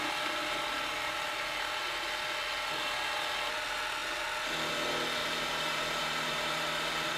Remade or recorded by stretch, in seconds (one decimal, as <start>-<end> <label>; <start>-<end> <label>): 0.0-5.2 recorded; 5.2-6.5 remade; 6.5-7.2 recorded